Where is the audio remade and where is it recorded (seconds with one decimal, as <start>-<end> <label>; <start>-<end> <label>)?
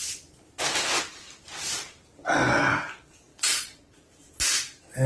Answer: 0.0-3.3 recorded; 3.3-4.3 remade; 4.3-5.1 recorded